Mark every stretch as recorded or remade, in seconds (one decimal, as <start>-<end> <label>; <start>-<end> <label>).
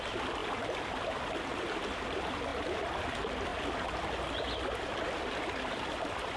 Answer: 0.0-6.4 recorded